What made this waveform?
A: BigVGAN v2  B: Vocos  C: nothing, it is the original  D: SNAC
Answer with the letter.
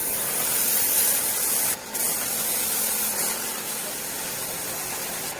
C